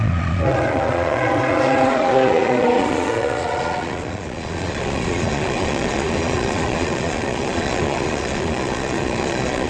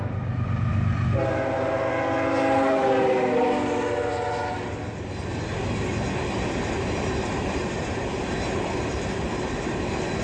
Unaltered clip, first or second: second